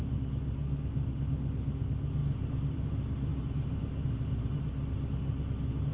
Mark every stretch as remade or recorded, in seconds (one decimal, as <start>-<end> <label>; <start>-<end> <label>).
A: 0.0-2.2 recorded; 2.2-2.9 remade; 2.9-3.3 recorded; 3.3-4.7 remade; 4.7-5.9 recorded